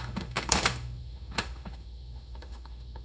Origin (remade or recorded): remade